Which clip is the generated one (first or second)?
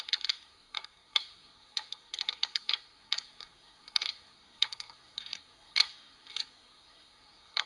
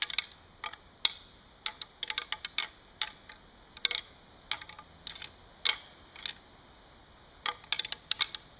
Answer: first